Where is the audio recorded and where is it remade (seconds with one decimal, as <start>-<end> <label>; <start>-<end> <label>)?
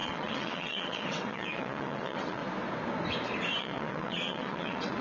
0.0-2.4 remade; 2.4-3.6 recorded; 3.6-5.0 remade